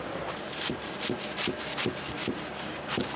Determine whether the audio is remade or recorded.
remade